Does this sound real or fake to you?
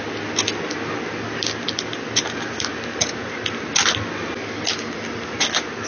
real